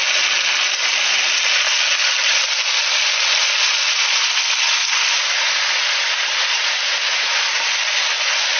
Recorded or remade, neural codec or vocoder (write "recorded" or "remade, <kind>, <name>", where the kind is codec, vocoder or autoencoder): recorded